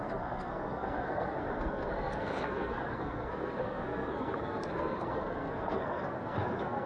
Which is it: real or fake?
fake